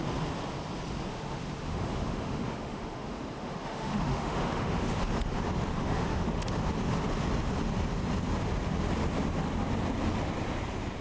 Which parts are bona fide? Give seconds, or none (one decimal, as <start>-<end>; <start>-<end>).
0.0-1.1; 5.0-5.7; 6.6-11.0